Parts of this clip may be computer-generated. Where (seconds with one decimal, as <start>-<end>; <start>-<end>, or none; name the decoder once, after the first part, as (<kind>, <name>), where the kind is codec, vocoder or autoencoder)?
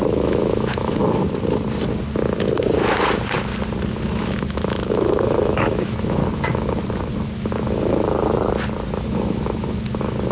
0.0-1.0 (autoencoder, DAC-VAE); 3.9-6.2; 9.0-10.3